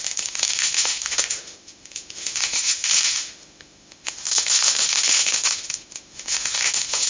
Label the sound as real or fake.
fake